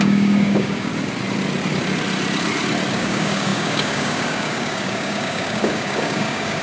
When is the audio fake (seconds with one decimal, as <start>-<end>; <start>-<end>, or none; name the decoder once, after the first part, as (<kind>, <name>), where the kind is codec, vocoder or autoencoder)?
0.0-0.9 (codec, DAC); 2.9-6.6